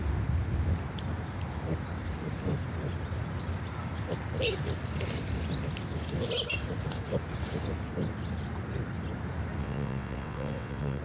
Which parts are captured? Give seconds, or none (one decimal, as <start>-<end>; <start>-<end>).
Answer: 0.0-9.6